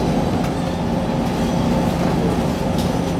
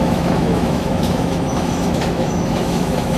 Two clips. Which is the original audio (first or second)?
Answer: first